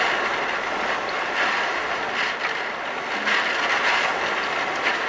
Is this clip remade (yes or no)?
no